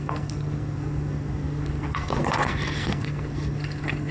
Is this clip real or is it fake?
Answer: fake